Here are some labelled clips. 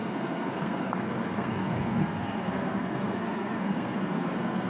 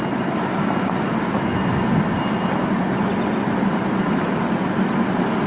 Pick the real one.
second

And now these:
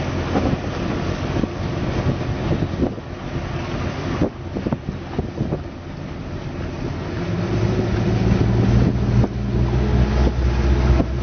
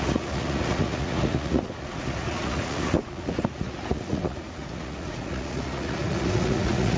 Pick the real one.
first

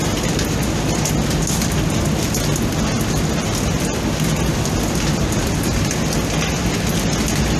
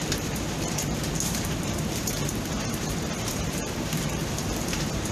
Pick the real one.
first